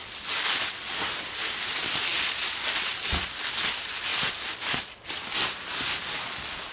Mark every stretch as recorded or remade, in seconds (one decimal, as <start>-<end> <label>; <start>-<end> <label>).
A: 0.0-6.7 recorded